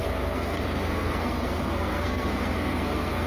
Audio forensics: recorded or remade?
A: remade